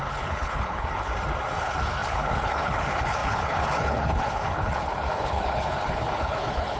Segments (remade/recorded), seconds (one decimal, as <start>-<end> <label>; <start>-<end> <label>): 0.0-1.1 remade; 1.1-1.6 recorded; 1.6-6.8 remade